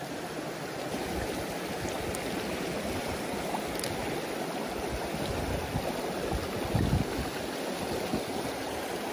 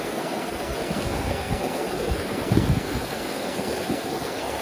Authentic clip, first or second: first